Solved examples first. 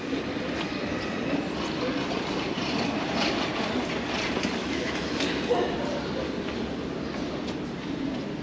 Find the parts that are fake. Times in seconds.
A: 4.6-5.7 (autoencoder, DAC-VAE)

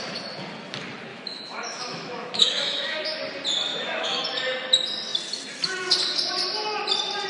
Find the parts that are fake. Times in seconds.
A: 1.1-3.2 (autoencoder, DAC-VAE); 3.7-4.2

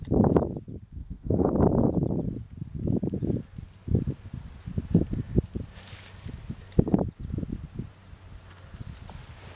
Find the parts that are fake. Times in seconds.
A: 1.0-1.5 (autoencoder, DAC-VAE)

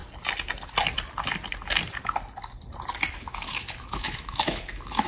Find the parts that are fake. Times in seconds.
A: 3.1-5.1 (autoencoder, DAC-VAE)

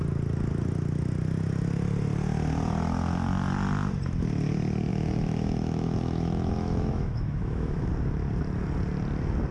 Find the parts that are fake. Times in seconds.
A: 4.9-7.9 (autoencoder, DAC-VAE)

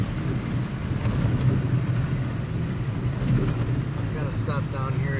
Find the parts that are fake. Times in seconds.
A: none

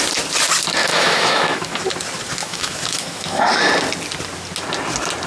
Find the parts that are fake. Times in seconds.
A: 0.8-1.8 (autoencoder, DAC-VAE); 2.4-3.4